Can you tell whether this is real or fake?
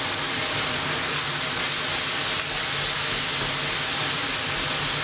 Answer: real